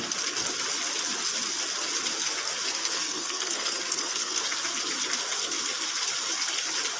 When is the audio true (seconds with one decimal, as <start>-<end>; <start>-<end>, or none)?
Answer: 0.0-2.8; 4.4-7.0